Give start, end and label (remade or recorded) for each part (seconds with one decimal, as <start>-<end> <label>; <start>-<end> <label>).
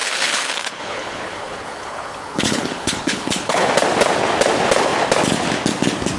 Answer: 0.0-3.7 remade; 3.7-6.2 recorded